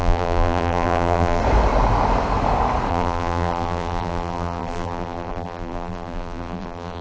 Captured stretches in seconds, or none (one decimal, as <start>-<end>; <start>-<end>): 1.4-2.9